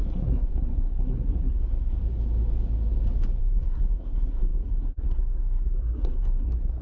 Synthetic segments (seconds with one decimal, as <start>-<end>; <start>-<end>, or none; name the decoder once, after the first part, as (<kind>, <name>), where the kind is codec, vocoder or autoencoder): 0.0-2.0 (codec, SNAC); 3.4-6.8